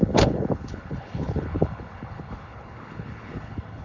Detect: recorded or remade remade